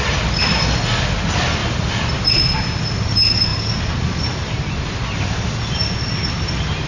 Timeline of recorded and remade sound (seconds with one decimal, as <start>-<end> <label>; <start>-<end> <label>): 0.0-6.9 recorded